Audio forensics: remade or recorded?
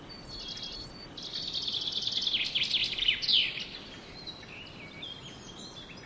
recorded